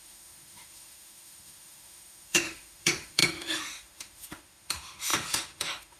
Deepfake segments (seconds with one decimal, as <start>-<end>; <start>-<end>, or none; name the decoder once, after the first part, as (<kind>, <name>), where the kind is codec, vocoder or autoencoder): 0.0-6.0 (autoencoder, DAC-VAE)